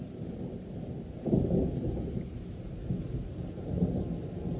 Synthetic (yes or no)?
no